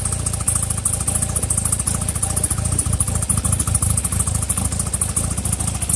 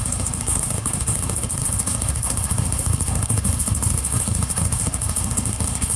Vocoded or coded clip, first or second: second